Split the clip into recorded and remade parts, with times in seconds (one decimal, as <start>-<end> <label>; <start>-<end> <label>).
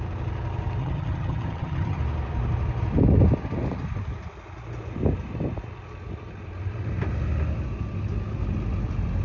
0.0-0.8 recorded; 0.8-2.0 remade; 2.0-9.2 recorded